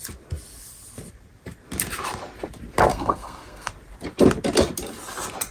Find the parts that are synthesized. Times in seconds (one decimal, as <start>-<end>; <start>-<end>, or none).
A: 2.9-3.7